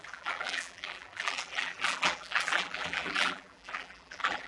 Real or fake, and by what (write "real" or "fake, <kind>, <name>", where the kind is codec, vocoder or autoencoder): fake, vocoder, BigVGAN v2